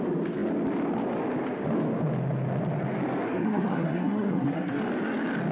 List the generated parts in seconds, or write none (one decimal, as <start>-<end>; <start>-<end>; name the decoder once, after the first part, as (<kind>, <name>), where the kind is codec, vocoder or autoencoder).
3.3-4.8 (codec, SNAC)